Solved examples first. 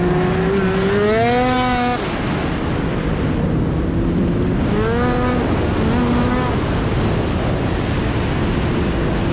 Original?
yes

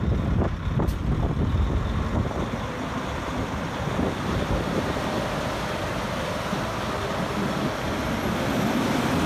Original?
yes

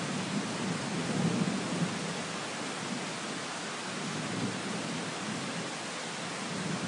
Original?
yes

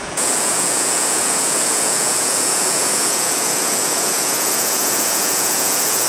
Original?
no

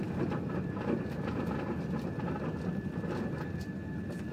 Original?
yes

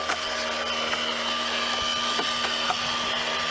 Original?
yes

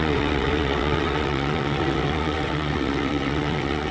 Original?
no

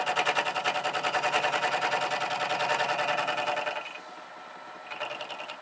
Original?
yes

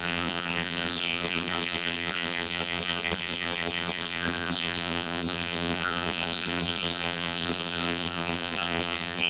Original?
no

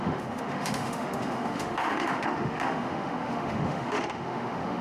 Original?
no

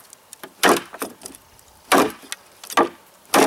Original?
yes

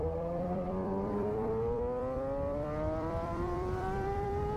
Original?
no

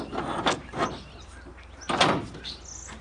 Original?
yes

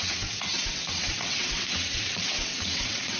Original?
no